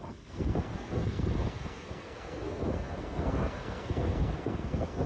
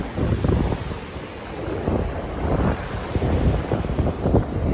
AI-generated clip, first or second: first